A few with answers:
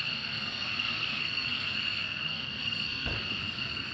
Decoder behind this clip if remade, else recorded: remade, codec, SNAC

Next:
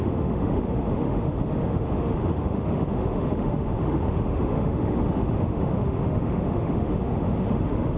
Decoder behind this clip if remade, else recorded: remade, autoencoder, DAC-VAE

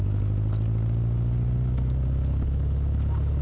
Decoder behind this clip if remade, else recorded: recorded